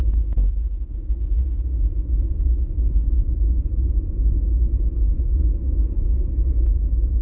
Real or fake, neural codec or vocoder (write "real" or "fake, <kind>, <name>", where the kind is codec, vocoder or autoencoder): fake, vocoder, Vocos